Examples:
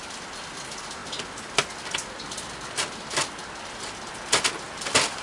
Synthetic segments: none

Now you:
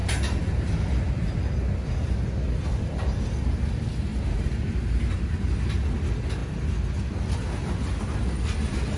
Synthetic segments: 0.0-0.8 (vocoder, BigVGAN v2); 4.1-5.0

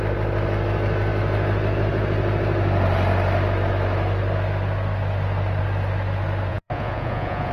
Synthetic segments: 6.5-7.5 (vocoder, Vocos)

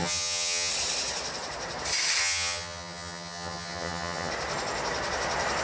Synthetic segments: 0.0-0.7 (vocoder, HiFi-GAN); 2.2-4.3

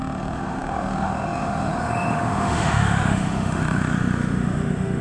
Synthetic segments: 0.0-5.0 (autoencoder, DAC-VAE)

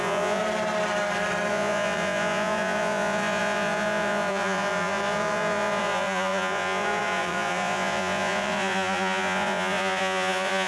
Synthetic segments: 0.0-0.4 (vocoder, Vocos); 1.5-10.7

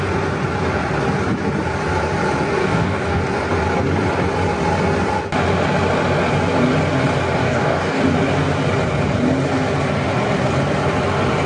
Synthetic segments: 2.6-3.2 (codec, DAC); 7.4-8.0

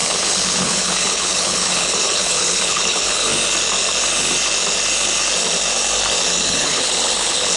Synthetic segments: 0.0-3.3 (codec, HILCodec); 6.5-7.6